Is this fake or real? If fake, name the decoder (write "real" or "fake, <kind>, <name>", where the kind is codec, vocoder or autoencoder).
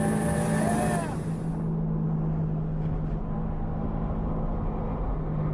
real